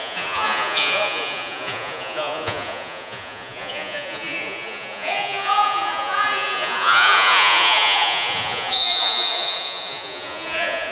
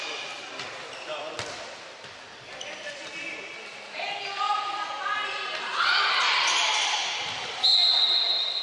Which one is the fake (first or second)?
first